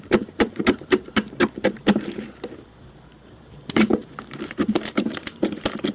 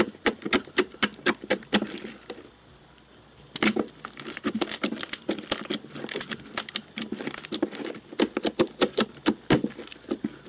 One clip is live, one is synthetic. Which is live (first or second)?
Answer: second